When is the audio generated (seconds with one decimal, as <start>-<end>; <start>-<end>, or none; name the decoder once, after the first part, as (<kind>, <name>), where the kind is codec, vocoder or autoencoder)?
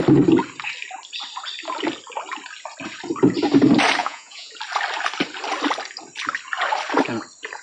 4.0-4.5 (vocoder, Vocos)